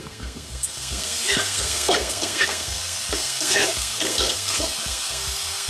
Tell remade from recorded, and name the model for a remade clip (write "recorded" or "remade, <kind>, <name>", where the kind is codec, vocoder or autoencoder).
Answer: remade, codec, SNAC